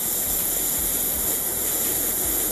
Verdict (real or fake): fake